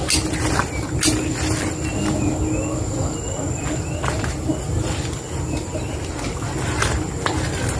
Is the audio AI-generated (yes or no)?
no